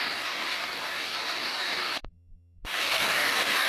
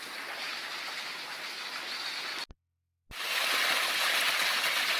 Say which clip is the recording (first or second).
second